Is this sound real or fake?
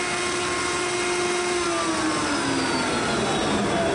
real